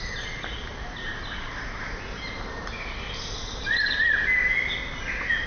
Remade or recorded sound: recorded